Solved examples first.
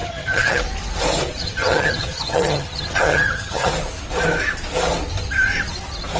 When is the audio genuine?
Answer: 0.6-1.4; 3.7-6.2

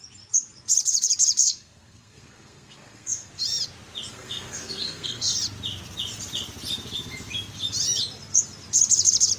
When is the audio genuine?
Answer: 0.0-1.4; 3.3-4.1; 5.4-9.4

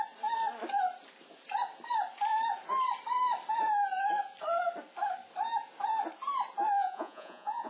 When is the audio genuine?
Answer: 0.0-6.8

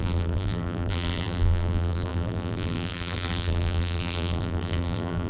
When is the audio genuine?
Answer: none

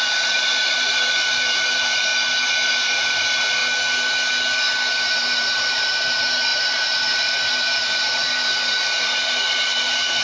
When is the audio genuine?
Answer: 2.1-2.7; 3.6-4.9